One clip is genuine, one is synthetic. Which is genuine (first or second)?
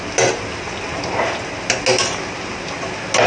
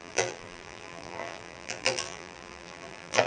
first